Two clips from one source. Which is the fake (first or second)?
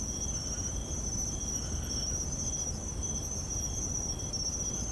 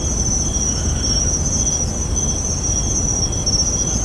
first